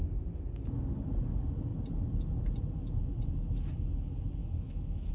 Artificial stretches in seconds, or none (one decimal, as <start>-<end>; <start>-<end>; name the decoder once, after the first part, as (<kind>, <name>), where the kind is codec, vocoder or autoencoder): 4.4-5.1 (autoencoder, DAC-VAE)